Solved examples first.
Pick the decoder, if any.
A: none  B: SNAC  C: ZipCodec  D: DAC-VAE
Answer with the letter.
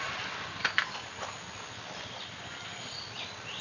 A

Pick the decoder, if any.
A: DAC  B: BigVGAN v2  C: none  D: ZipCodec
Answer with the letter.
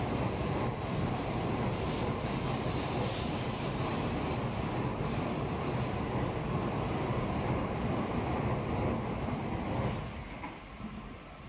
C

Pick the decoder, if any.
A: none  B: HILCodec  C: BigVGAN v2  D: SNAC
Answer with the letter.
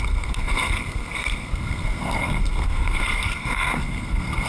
D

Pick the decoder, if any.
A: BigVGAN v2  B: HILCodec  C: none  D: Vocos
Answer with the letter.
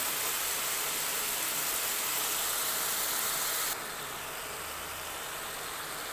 C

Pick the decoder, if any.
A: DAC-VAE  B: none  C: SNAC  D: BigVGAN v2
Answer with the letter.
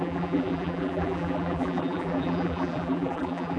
D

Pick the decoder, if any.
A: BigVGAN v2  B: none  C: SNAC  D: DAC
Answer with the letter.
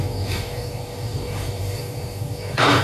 D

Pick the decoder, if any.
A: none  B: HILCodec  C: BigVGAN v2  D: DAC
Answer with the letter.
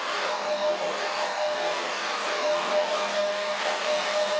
D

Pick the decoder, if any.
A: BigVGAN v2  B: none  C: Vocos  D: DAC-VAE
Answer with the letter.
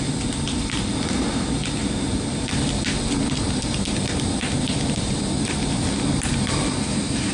B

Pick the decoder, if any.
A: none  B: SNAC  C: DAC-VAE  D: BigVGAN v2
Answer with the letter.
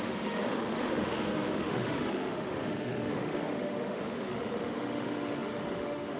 C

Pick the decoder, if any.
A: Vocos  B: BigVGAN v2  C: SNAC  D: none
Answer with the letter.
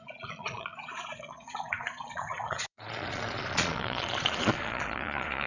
A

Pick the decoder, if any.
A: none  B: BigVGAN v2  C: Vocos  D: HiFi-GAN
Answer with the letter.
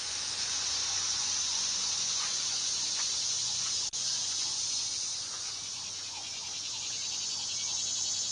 C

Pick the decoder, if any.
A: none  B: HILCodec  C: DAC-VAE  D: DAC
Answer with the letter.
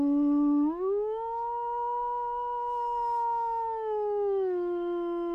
C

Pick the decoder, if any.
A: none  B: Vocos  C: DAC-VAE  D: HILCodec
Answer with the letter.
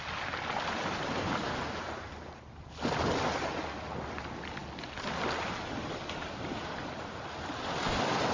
A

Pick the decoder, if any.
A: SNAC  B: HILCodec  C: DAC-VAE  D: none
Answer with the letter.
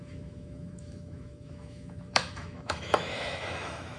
C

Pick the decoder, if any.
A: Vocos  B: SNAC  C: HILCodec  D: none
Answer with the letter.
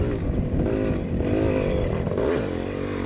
D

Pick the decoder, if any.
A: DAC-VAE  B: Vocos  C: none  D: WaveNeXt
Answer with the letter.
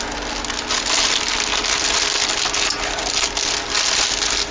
C